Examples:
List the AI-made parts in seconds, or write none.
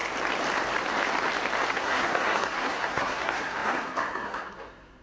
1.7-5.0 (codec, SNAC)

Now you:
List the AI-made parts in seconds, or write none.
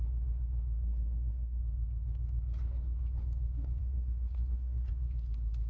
0.8-1.6 (codec, SNAC); 3.8-4.9